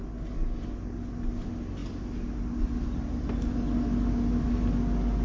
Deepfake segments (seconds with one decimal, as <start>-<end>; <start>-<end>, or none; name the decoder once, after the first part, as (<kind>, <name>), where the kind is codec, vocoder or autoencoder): none